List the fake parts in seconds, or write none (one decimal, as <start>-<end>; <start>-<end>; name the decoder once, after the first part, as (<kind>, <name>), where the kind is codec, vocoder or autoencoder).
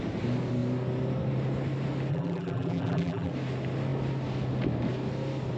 2.1-3.3 (vocoder, BigVGAN v2)